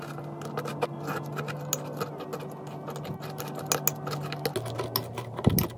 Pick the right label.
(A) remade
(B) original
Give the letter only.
B